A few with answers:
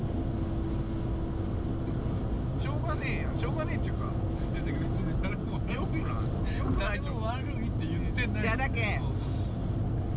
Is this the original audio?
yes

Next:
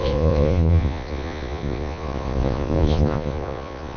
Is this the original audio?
no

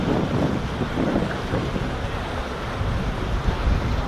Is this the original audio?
yes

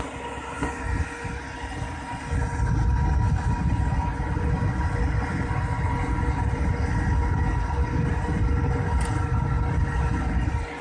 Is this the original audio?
yes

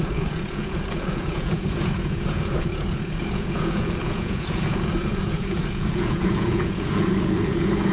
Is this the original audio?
no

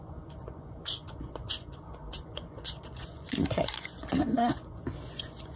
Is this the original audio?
no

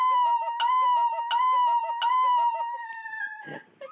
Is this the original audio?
yes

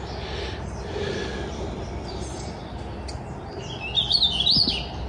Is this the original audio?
yes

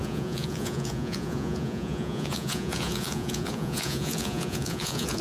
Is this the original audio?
no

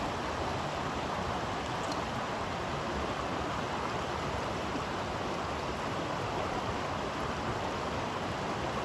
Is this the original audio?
yes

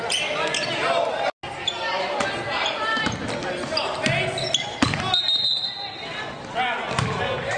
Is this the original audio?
yes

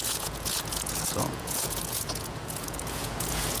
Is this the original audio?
no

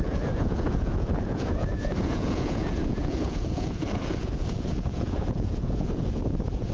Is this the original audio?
no